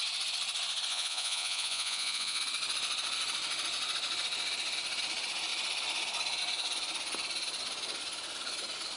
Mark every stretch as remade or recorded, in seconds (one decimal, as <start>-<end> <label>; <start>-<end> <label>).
0.0-0.9 recorded; 0.9-2.4 remade; 2.4-9.0 recorded